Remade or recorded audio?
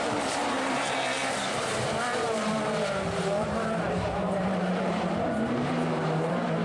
remade